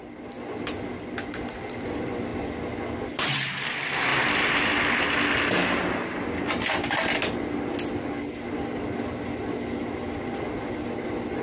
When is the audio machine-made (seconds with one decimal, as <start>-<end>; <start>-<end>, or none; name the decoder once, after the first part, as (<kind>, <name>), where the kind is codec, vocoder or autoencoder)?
0.0-7.2 (vocoder, BigVGAN v2); 9.0-11.4